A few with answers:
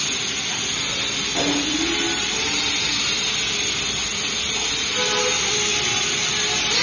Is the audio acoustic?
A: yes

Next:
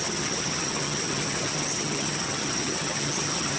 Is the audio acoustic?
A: no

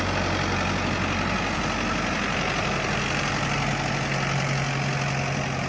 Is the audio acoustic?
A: yes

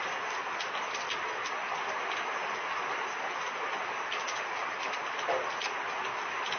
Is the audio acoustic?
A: yes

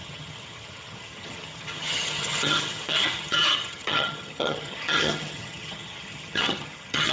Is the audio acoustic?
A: no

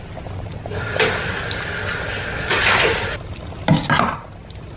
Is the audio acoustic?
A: yes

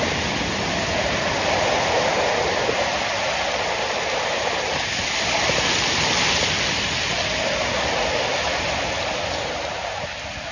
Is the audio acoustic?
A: yes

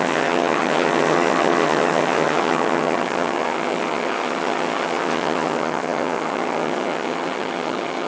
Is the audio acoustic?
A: no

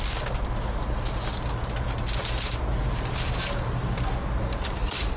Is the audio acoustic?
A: yes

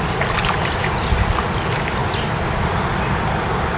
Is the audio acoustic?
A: yes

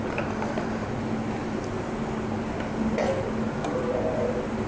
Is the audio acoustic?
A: yes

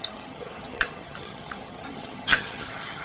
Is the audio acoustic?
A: no